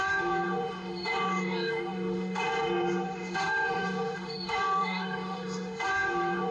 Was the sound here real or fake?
fake